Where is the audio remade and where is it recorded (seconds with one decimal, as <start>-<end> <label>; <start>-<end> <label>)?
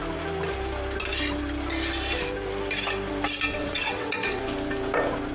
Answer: 0.0-3.5 recorded; 3.5-4.4 remade; 4.4-5.3 recorded